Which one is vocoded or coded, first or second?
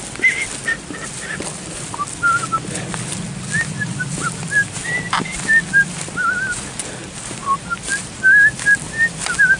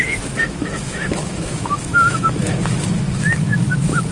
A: second